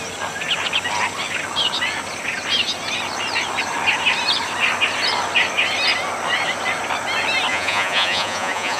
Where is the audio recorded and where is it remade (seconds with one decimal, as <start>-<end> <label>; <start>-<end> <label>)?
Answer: 0.0-7.5 recorded; 7.5-8.8 remade